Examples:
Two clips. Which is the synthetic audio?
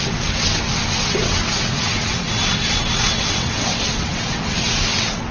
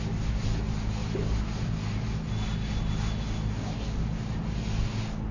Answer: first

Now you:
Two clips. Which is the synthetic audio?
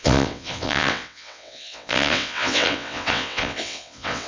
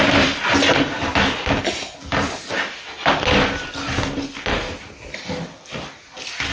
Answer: first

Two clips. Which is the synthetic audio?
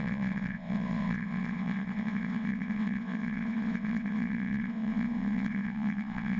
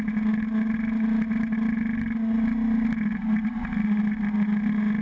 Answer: first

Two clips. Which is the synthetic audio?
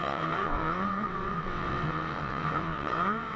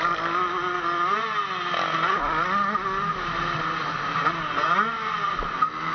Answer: first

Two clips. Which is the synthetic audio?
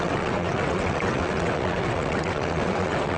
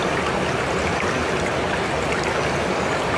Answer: first